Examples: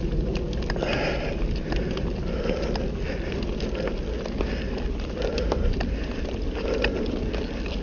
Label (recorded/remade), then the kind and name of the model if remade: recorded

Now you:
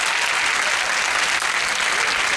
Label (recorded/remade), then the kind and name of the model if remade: recorded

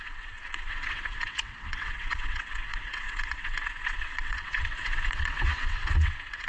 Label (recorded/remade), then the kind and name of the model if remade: remade, vocoder, WaveNeXt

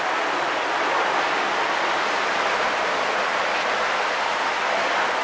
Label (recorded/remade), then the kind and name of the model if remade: recorded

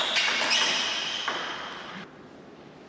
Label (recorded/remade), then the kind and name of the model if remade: recorded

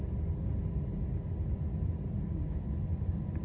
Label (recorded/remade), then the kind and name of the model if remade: recorded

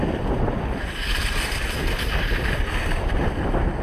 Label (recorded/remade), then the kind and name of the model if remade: recorded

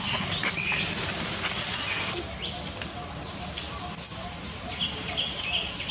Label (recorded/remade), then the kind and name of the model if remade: recorded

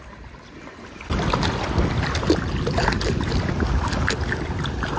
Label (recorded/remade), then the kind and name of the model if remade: recorded